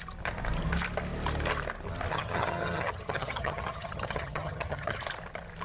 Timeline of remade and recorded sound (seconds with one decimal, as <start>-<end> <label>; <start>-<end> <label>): 0.0-2.1 recorded; 2.1-5.0 remade; 5.0-5.6 recorded